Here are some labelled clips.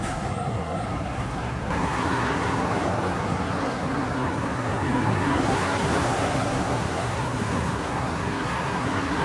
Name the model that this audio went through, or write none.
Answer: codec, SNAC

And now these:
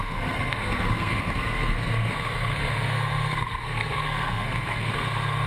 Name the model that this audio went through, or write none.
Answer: codec, SNAC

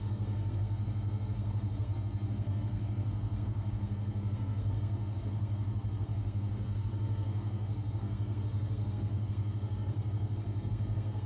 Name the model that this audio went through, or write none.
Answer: codec, SNAC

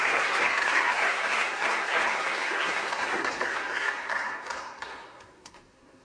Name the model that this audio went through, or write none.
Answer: codec, SNAC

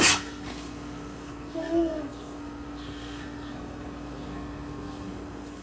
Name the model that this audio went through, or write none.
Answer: codec, SNAC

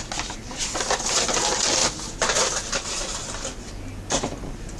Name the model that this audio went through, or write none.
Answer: none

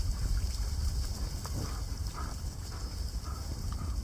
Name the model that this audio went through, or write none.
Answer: none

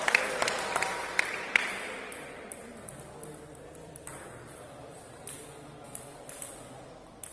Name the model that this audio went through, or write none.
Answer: none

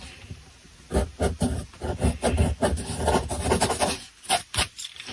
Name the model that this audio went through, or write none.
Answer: none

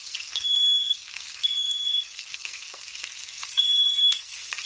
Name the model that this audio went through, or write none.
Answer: codec, SNAC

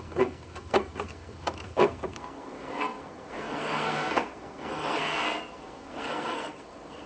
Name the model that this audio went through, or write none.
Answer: codec, SNAC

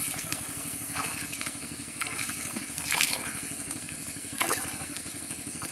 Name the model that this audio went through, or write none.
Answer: codec, SNAC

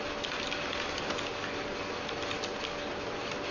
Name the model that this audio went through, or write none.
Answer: none